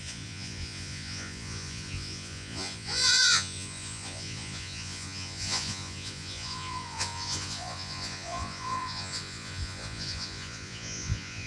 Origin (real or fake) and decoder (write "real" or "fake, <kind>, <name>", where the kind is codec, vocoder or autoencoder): fake, vocoder, Vocos